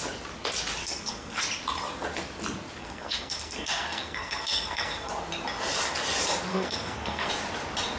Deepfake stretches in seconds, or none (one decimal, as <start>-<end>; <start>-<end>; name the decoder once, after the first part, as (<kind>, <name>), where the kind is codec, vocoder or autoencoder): 0.8-1.4 (codec, SNAC); 2.8-5.1; 6.5-7.3